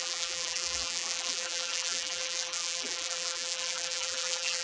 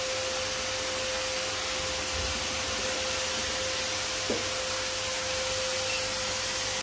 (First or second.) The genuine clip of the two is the second